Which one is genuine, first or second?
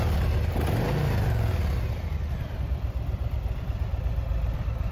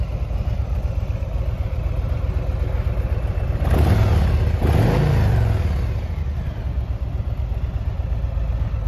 second